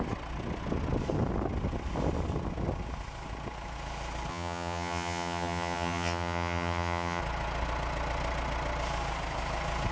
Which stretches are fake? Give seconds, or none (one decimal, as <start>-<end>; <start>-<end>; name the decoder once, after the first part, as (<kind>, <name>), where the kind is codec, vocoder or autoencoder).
4.3-7.2 (vocoder, HiFi-GAN)